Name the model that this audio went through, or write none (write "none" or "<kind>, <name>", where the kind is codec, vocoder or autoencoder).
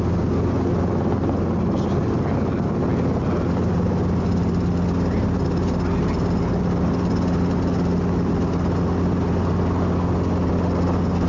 none